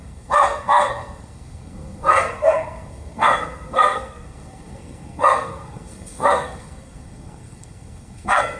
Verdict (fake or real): fake